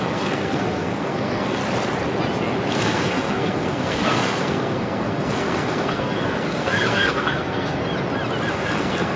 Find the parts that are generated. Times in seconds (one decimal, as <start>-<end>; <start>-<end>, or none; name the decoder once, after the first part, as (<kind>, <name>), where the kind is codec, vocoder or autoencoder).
0.0-1.6 (codec, SNAC); 2.7-7.8; 8.5-9.2